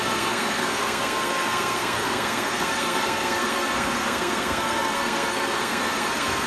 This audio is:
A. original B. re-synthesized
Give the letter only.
B